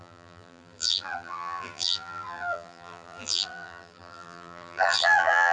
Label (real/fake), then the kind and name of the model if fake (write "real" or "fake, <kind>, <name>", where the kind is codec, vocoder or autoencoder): fake, vocoder, BigVGAN v2